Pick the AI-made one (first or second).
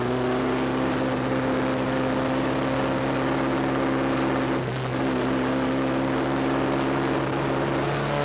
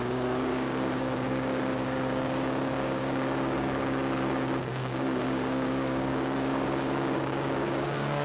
second